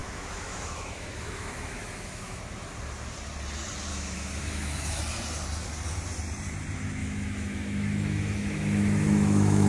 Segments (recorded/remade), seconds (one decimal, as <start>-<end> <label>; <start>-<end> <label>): 0.0-2.4 remade; 2.4-3.9 recorded; 3.9-5.0 remade; 5.0-7.0 recorded; 7.0-9.7 remade